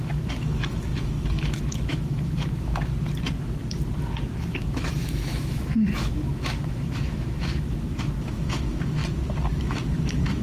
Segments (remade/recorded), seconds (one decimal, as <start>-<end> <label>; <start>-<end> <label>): 0.0-2.9 remade; 2.9-4.4 recorded; 4.4-9.0 remade; 9.0-9.5 recorded; 9.5-10.4 remade

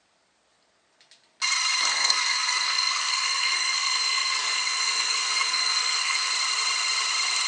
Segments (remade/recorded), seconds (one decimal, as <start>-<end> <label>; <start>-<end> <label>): 0.0-1.9 recorded; 1.9-6.3 remade; 6.3-7.5 recorded